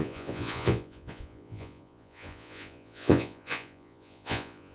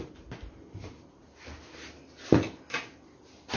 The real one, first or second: second